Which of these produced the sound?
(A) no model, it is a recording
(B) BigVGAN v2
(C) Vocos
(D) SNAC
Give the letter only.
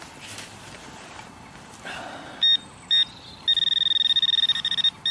A